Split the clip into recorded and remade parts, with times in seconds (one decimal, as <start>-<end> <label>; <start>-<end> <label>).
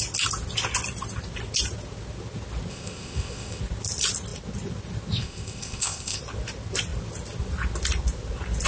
0.0-2.7 recorded; 2.7-3.6 remade; 3.6-5.2 recorded; 5.2-6.2 remade; 6.2-8.7 recorded